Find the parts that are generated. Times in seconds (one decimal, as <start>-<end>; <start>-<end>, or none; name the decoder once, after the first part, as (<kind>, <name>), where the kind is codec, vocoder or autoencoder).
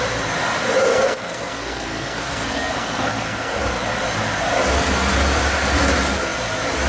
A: 0.9-3.6 (codec, SNAC)